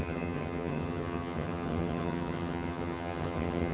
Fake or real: fake